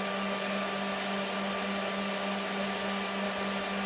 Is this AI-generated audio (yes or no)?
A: no